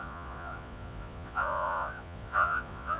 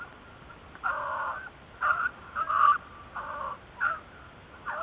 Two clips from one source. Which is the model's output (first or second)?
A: first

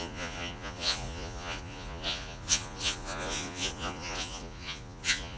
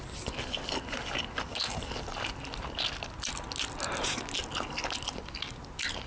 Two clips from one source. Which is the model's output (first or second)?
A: first